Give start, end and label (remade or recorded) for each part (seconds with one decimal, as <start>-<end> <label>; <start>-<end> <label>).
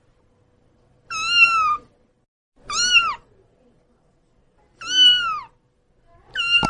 0.0-6.7 recorded